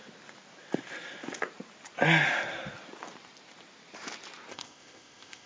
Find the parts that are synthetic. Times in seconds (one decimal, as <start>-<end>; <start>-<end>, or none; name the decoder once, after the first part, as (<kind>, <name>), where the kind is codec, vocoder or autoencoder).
4.5-5.5 (codec, ZipCodec)